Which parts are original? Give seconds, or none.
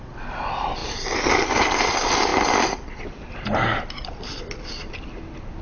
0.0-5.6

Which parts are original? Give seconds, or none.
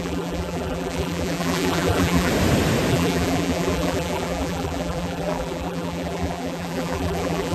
2.3-2.9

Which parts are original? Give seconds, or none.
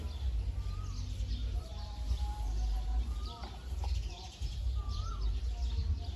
0.0-1.4; 5.1-6.2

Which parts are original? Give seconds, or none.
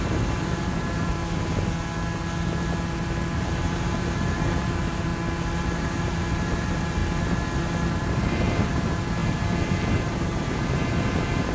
1.2-3.3; 5.1-5.6; 7.0-8.0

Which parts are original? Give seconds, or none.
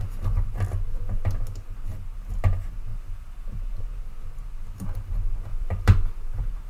0.0-2.9; 3.8-5.5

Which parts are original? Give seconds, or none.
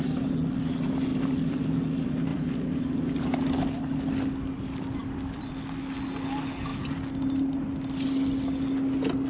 0.0-1.1; 1.6-2.3; 3.2-5.0; 5.5-9.3